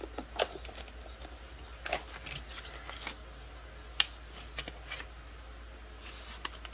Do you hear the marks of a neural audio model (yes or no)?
no